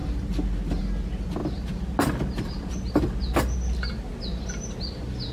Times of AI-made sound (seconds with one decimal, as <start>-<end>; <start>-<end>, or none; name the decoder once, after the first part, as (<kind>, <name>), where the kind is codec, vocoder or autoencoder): none